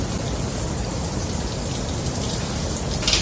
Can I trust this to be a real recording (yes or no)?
yes